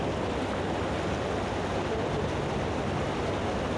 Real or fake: real